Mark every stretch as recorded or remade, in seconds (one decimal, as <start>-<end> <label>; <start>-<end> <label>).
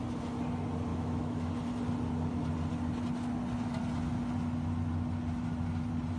0.0-0.9 recorded; 0.9-1.5 remade; 1.5-6.2 recorded